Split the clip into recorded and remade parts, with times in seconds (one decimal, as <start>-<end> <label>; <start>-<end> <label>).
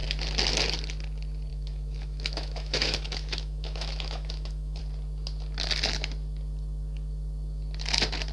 0.0-1.5 recorded; 1.5-4.8 remade; 4.8-8.3 recorded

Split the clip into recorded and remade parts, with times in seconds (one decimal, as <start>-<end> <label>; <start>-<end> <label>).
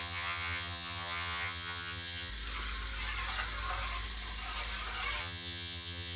0.0-2.3 remade; 2.3-5.2 recorded; 5.2-6.2 remade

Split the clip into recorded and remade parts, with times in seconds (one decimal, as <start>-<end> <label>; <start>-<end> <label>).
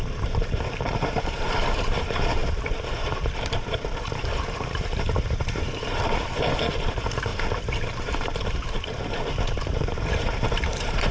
0.0-11.1 remade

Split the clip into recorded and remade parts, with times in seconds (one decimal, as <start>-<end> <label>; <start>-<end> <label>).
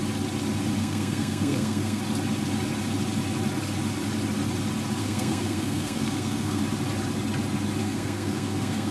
0.0-0.8 recorded; 0.8-2.0 remade; 2.0-5.0 recorded; 5.0-6.6 remade; 6.6-7.8 recorded; 7.8-8.9 remade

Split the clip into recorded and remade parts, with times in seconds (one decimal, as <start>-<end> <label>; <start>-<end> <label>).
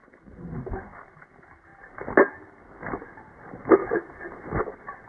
0.0-0.9 remade; 0.9-1.7 recorded; 1.7-2.3 remade; 2.3-3.8 recorded; 3.8-4.6 remade; 4.6-5.1 recorded